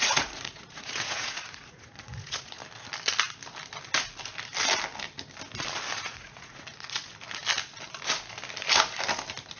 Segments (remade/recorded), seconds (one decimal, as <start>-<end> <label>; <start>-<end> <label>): 0.0-2.6 remade; 2.6-6.0 recorded; 6.0-7.1 remade; 7.1-9.6 recorded